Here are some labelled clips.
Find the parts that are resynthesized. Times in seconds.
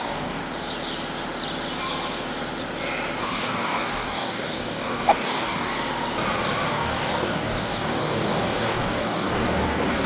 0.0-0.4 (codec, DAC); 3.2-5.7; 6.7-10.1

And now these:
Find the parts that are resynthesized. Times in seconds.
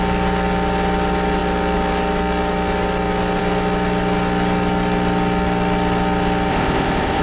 6.5-7.2 (codec, ZipCodec)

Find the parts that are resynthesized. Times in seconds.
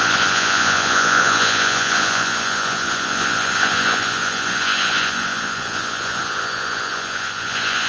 0.0-7.9 (vocoder, Vocos)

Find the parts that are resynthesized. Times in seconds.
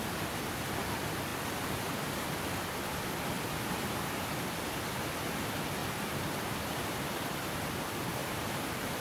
5.8-6.9 (vocoder, BigVGAN v2); 8.2-9.0